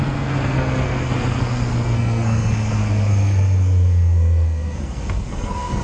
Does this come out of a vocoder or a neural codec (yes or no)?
yes